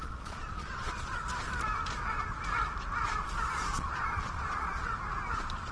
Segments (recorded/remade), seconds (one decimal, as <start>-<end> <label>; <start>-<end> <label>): 0.0-1.2 remade; 1.2-3.7 recorded; 3.7-4.8 remade; 4.8-5.7 recorded